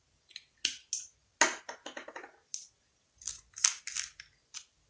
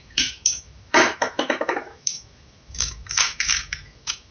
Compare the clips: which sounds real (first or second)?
first